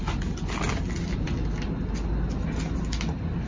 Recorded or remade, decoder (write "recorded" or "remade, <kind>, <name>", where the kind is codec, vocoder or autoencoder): recorded